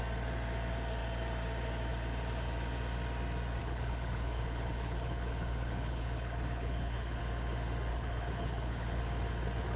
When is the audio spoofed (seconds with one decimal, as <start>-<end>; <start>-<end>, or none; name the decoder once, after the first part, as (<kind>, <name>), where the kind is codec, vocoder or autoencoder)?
3.6-7.2 (codec, HILCodec); 7.9-9.0